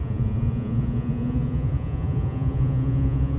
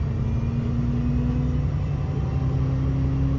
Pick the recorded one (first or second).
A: second